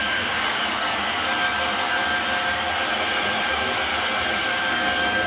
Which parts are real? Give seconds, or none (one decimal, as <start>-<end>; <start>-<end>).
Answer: 0.9-3.3; 3.9-4.4